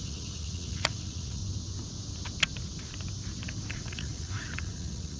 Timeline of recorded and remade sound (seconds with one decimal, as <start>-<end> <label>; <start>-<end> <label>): 0.0-1.4 remade; 1.4-3.7 recorded; 3.7-5.2 remade